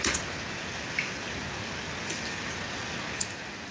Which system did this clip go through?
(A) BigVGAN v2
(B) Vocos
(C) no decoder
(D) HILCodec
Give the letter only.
C